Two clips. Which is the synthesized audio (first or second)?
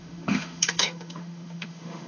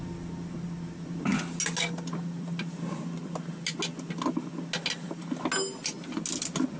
first